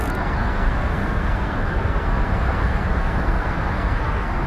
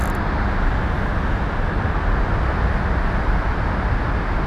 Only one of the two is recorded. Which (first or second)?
second